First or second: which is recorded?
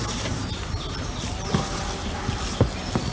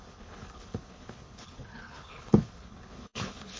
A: first